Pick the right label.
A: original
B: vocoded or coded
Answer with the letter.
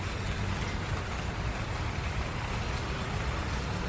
A